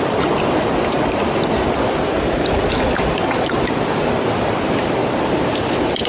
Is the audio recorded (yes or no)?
yes